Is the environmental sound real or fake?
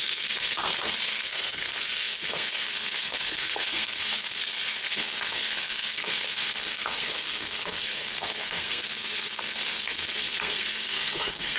fake